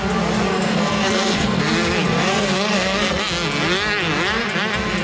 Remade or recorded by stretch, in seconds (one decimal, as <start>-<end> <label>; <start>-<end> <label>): 0.0-0.5 recorded; 0.5-1.6 remade; 1.6-2.3 recorded; 2.3-3.2 remade; 3.2-5.0 recorded